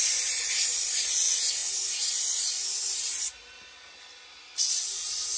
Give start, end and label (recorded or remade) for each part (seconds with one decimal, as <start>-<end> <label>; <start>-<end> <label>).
0.0-5.4 recorded